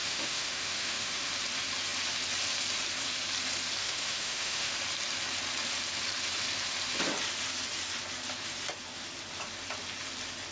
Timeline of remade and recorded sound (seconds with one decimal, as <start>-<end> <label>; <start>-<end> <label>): 0.0-1.3 remade; 1.3-3.8 recorded; 3.8-4.7 remade; 4.7-10.5 recorded